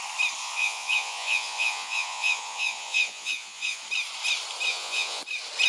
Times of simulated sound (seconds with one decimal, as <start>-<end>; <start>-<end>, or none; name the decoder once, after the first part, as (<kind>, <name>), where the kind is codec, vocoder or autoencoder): 0.4-3.8 (vocoder, Vocos); 4.7-5.2